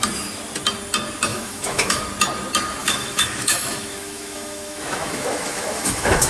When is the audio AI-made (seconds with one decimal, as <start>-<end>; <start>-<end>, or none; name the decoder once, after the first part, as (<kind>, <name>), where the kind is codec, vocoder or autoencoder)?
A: 1.3-2.0 (autoencoder, DAC-VAE); 2.8-6.3